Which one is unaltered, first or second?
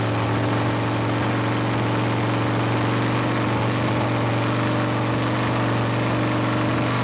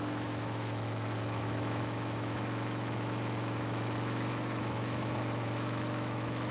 first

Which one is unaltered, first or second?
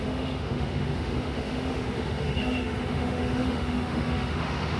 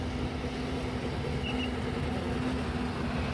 second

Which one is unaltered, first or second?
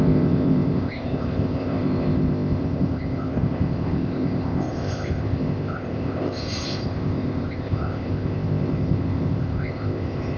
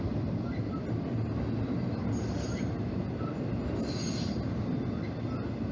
second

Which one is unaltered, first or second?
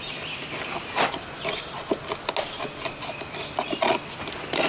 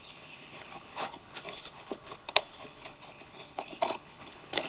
first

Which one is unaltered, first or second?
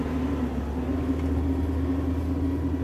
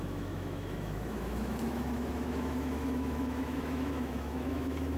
first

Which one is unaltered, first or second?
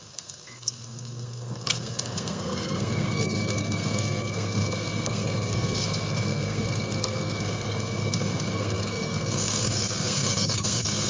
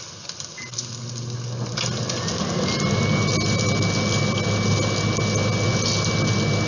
second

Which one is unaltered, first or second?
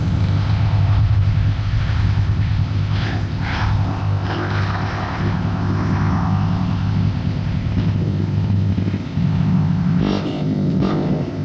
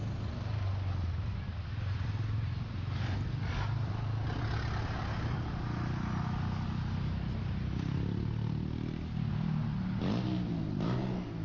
second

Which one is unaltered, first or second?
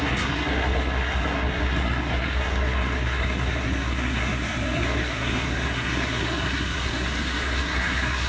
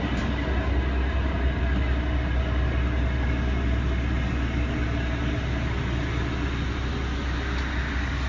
second